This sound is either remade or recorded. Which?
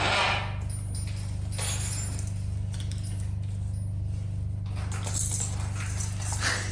recorded